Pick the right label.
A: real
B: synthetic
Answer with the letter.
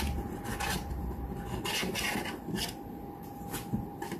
A